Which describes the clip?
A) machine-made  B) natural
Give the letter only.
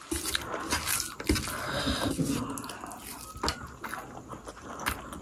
B